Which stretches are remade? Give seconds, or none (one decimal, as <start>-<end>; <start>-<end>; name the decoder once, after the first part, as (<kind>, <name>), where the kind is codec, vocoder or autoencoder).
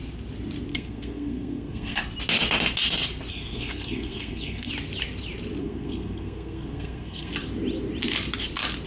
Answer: 0.7-2.0 (codec, SNAC); 3.3-4.7; 5.6-7.3